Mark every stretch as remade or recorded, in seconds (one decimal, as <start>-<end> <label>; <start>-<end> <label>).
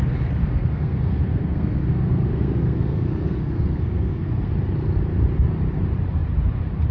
0.0-0.4 recorded; 0.4-4.5 remade; 4.5-6.9 recorded